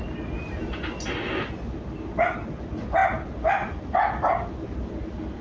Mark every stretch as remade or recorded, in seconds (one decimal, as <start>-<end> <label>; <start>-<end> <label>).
0.0-5.4 recorded